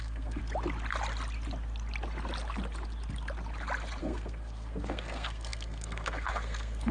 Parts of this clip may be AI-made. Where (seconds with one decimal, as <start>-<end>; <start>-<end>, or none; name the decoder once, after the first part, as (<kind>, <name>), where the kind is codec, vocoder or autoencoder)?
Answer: 0.0-0.4 (codec, SNAC); 4.0-6.9